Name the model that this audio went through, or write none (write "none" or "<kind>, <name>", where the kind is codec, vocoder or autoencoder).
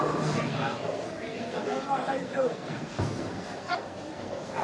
codec, SNAC